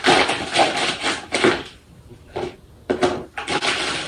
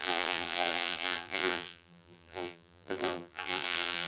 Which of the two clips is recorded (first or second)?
first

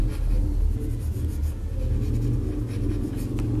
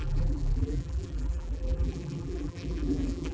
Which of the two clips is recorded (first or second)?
first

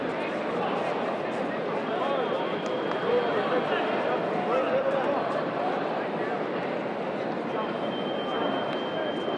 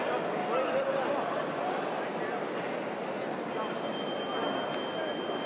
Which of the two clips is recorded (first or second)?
second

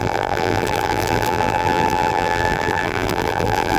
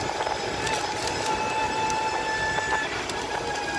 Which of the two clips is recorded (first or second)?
second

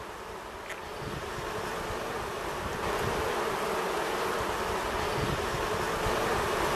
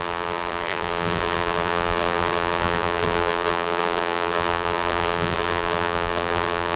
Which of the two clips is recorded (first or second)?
first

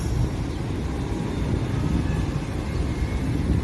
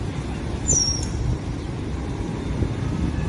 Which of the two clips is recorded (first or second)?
first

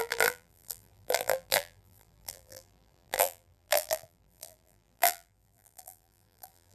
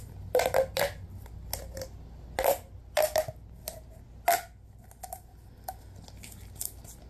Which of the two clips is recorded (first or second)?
second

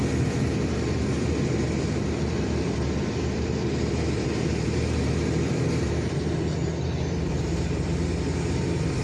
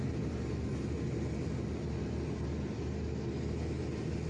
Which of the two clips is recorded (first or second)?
second